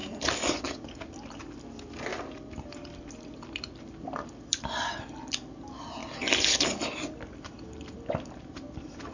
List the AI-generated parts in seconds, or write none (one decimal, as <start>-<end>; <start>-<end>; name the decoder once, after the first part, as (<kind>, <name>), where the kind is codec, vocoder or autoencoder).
0.0-0.6 (vocoder, BigVGAN v2)

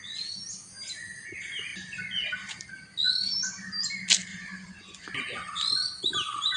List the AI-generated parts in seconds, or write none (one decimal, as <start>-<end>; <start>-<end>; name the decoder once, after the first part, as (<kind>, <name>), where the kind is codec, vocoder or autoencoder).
4.3-5.1 (vocoder, Vocos)

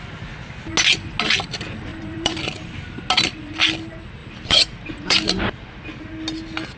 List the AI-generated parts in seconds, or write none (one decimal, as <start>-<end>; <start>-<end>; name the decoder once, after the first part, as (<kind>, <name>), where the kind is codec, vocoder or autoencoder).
1.9-2.7 (vocoder, BigVGAN v2); 4.2-5.7

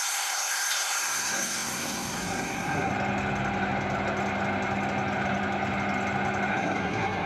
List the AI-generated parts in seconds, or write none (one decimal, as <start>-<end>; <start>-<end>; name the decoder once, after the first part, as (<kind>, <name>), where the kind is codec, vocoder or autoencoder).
0.0-2.9 (codec, SNAC); 6.5-7.3

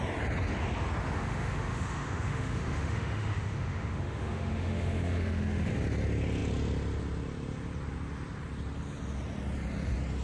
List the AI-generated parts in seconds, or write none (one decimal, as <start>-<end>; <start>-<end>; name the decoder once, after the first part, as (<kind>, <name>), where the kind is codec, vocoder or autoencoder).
1.0-5.7 (autoencoder, DAC-VAE)